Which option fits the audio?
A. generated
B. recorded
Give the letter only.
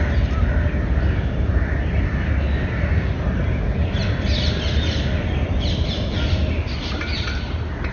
B